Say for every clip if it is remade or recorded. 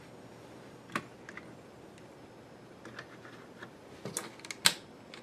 recorded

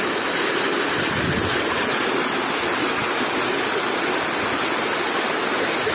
recorded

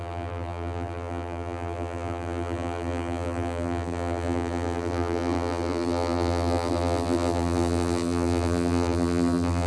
remade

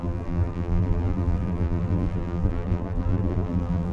remade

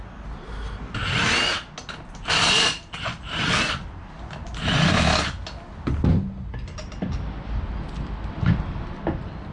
recorded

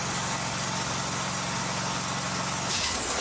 recorded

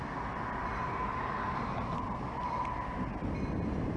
recorded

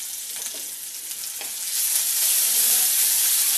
recorded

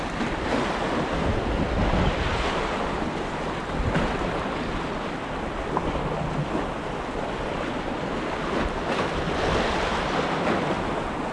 recorded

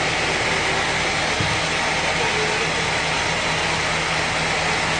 recorded